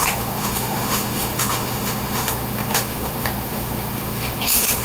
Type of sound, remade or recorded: remade